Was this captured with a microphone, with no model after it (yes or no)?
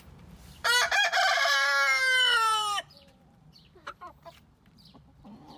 no